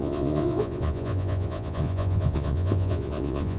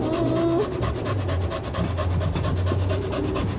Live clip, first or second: second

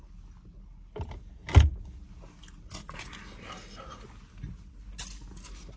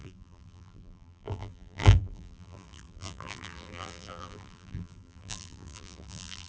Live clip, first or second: first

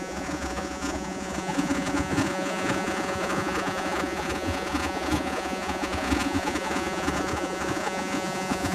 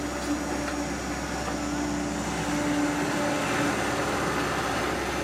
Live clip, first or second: second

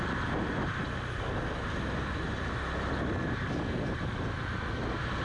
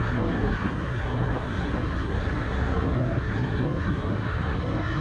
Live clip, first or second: first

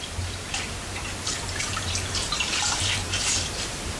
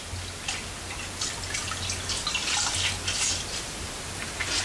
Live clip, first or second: second